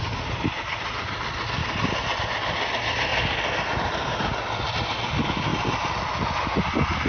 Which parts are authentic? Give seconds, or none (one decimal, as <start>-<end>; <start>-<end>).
0.0-1.6; 2.2-5.5